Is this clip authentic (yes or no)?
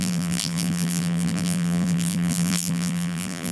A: no